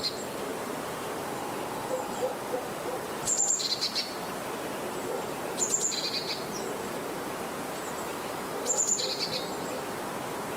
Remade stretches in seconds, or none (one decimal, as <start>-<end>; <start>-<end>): none